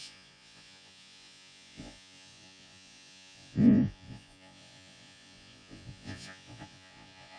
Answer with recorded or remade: remade